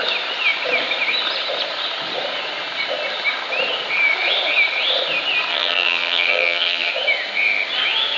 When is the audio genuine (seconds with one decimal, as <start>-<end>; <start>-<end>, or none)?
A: 0.0-5.5; 6.9-8.2